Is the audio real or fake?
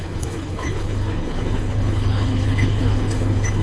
fake